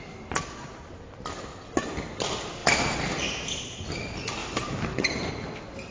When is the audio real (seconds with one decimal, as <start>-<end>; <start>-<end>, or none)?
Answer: 0.0-4.4; 5.3-5.9